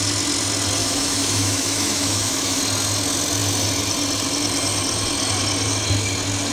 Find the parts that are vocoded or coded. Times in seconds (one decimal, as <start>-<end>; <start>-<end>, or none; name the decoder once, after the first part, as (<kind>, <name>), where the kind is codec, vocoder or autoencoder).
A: 0.8-2.6 (autoencoder, DAC-VAE)